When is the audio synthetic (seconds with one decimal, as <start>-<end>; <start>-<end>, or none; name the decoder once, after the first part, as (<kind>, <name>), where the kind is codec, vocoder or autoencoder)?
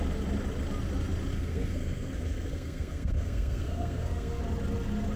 1.3-4.4 (codec, SNAC)